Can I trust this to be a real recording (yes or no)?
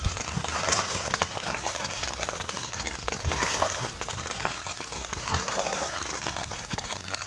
no